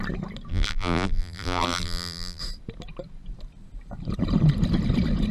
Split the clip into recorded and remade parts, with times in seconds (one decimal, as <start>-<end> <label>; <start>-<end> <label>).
0.0-0.5 recorded; 0.5-2.4 remade; 2.4-5.3 recorded